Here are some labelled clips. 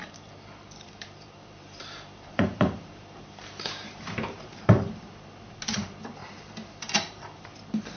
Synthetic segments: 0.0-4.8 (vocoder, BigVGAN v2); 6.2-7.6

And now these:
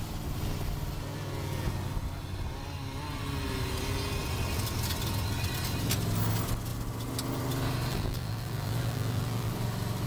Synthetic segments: 7.9-9.5 (vocoder, BigVGAN v2)

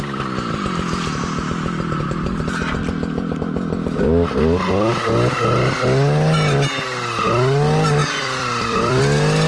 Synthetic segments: 8.0-9.0 (vocoder, BigVGAN v2)

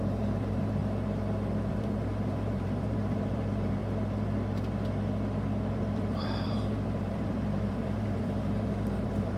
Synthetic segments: 0.0-0.8 (vocoder, BigVGAN v2); 1.7-3.8; 5.7-9.4

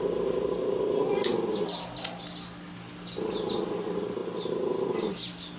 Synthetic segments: none

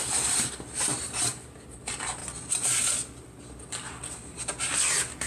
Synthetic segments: 0.0-2.2 (vocoder, BigVGAN v2)